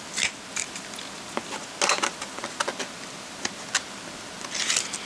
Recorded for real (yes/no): yes